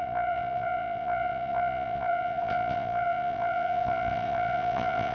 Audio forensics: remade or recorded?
remade